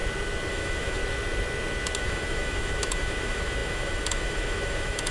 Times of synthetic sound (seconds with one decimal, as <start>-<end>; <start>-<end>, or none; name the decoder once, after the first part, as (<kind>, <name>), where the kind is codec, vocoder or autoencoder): 0.5-1.0 (autoencoder, DAC-VAE); 2.0-5.1